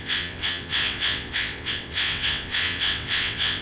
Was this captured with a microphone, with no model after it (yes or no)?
no